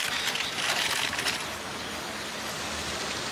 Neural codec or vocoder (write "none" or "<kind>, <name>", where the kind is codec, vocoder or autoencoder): none